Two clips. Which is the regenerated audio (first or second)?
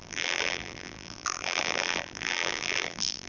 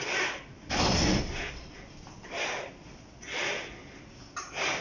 first